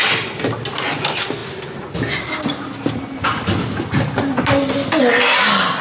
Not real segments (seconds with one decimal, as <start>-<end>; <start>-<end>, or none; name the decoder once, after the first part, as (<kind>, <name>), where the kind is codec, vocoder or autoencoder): none